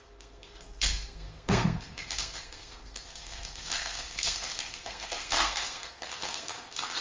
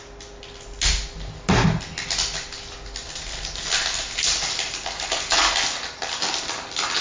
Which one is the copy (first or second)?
first